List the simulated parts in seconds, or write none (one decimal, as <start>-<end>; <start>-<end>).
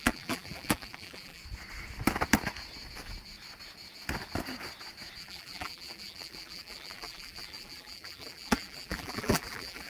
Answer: 0.0-1.4; 5.2-9.9